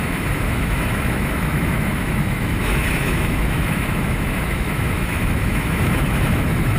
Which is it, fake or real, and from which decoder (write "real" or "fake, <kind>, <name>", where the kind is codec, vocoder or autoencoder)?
fake, autoencoder, DAC-VAE